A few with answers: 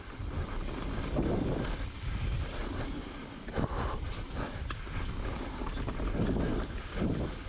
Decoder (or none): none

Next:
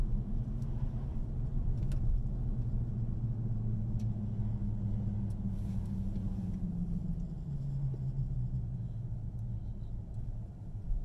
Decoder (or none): none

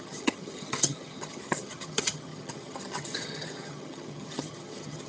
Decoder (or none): vocoder, HiFi-GAN